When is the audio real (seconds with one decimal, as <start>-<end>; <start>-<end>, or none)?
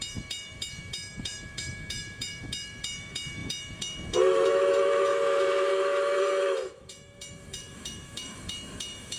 5.1-5.7